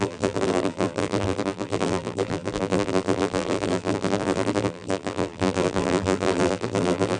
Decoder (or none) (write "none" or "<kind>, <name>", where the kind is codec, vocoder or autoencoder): vocoder, BigVGAN v2